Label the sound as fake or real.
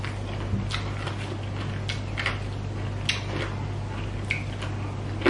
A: real